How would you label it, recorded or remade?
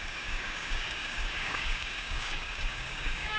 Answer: remade